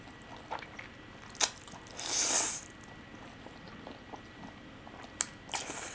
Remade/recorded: recorded